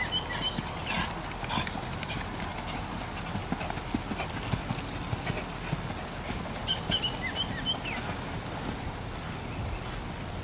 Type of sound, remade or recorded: recorded